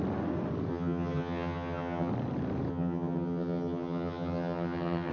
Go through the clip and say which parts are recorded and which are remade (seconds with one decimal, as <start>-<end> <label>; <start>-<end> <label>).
0.0-0.7 recorded; 0.7-2.1 remade; 2.1-2.7 recorded; 2.7-5.1 remade